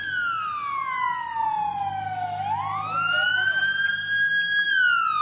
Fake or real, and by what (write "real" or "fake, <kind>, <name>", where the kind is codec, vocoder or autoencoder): real